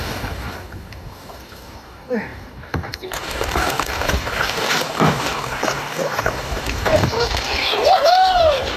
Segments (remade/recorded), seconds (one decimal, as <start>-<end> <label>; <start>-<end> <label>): 0.0-8.8 remade